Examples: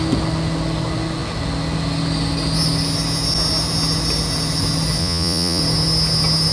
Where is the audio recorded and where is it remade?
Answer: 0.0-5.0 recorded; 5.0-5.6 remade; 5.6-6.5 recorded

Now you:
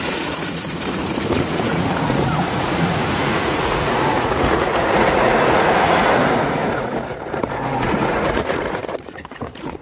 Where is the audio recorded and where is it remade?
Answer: 0.0-9.8 remade

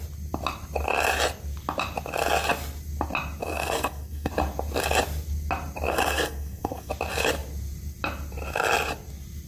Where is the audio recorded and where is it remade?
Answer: 0.0-3.4 recorded; 3.4-4.3 remade; 4.3-5.9 recorded; 5.9-6.9 remade; 6.9-9.5 recorded